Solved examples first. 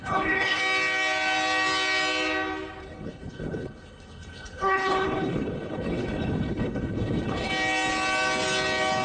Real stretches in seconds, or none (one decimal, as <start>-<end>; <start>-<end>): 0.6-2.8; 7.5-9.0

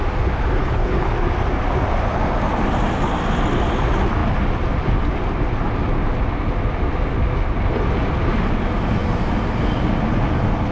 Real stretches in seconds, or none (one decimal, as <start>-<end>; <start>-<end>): 0.0-0.6; 1.1-10.7

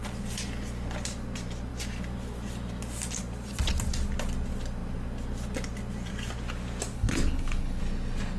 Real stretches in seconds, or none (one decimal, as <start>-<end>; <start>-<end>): 0.0-6.9; 7.8-8.4

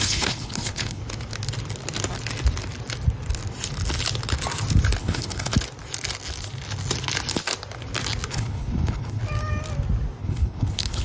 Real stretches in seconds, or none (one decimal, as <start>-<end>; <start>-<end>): 1.0-5.0; 5.5-8.3; 9.2-10.2

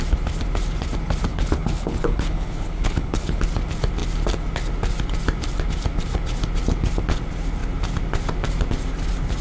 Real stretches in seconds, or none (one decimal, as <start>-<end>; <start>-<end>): 0.0-1.3; 3.4-9.4

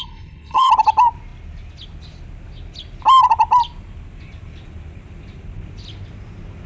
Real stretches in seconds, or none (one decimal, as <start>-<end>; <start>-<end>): 0.7-6.7

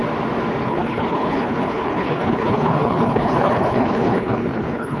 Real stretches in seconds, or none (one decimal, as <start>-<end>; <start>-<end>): 0.0-0.6

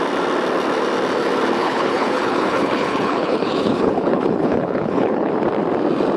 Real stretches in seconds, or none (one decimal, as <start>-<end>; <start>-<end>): 0.0-1.6; 5.3-6.2